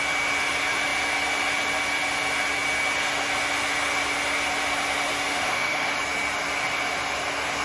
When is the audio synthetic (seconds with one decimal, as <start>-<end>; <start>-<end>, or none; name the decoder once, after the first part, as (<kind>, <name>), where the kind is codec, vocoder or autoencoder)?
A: 5.3-5.9 (autoencoder, DAC-VAE)